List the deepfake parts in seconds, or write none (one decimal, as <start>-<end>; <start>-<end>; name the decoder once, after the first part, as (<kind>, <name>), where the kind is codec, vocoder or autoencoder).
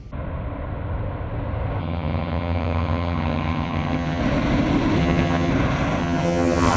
1.8-4.2 (vocoder, HiFi-GAN); 5.0-5.5; 6.0-6.8